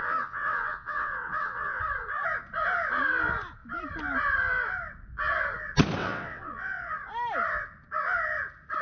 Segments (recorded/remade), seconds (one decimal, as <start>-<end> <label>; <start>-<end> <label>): 0.0-1.8 remade; 1.8-6.0 recorded; 6.0-6.9 remade; 6.9-8.8 recorded